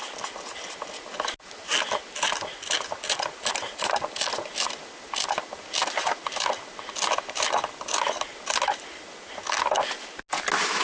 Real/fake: real